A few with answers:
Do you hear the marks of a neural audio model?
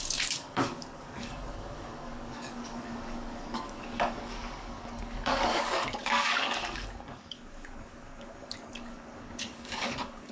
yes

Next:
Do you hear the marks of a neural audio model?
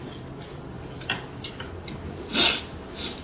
no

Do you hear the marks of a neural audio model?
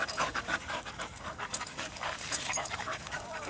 yes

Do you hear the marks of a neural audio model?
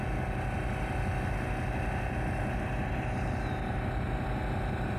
no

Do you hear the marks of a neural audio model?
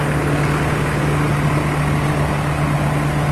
no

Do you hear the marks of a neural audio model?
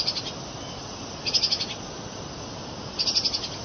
no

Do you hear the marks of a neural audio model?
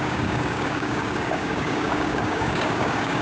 yes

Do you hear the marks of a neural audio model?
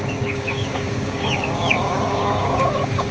yes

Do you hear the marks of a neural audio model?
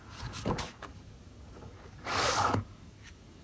yes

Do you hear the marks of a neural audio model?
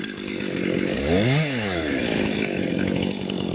yes